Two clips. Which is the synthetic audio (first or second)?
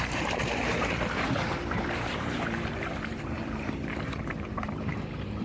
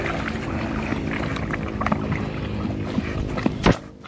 first